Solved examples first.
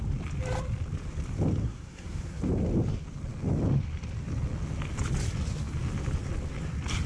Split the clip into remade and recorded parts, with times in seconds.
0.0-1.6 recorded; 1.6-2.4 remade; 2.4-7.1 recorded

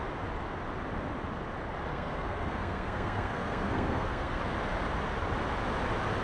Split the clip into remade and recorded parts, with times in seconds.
0.0-1.9 recorded; 1.9-4.4 remade; 4.4-6.2 recorded

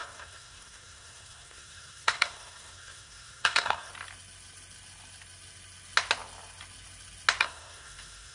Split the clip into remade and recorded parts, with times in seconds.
0.0-3.9 remade; 3.9-7.4 recorded; 7.4-8.3 remade

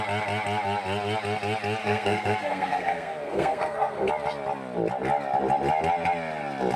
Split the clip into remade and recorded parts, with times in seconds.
0.0-1.8 recorded; 1.8-4.1 remade; 4.1-6.8 recorded

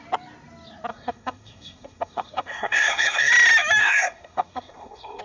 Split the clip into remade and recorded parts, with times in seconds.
0.0-0.9 recorded; 0.9-3.3 remade; 3.3-3.8 recorded; 3.8-5.2 remade

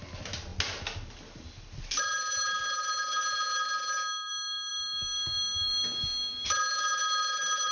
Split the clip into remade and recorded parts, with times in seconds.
0.0-7.7 recorded

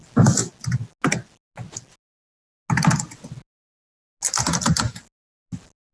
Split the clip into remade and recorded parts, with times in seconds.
0.0-5.9 recorded